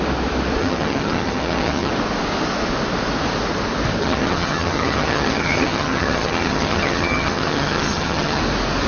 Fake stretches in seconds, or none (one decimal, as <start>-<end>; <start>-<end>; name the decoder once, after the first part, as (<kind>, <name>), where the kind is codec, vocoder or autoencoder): 0.6-1.9 (vocoder, HiFi-GAN); 4.0-8.4